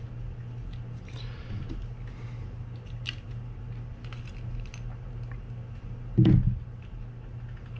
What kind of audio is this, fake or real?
real